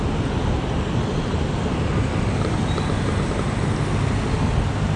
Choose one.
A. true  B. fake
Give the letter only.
A